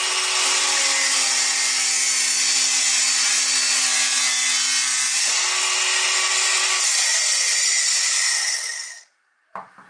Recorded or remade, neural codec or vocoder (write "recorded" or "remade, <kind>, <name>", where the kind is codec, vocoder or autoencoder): recorded